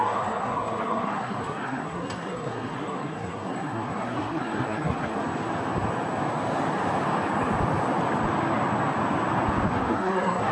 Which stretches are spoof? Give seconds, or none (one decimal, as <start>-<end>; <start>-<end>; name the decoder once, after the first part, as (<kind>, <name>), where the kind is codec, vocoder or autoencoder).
0.0-5.2 (codec, SNAC); 9.7-10.5